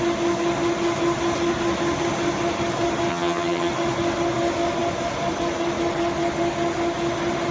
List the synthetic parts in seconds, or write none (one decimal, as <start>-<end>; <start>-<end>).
3.1-3.7